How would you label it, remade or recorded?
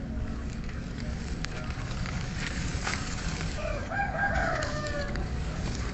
remade